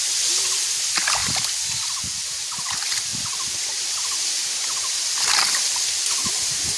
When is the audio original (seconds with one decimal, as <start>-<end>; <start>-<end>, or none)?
0.0-6.8